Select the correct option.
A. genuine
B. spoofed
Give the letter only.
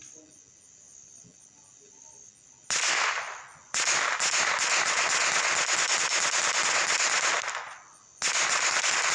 A